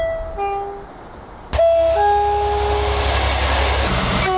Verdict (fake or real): real